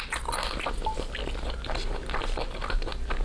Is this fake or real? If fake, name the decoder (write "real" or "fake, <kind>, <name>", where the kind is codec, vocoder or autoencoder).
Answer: real